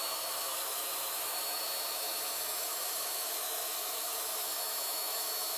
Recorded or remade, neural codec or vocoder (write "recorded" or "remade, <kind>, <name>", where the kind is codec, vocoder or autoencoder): remade, autoencoder, DAC-VAE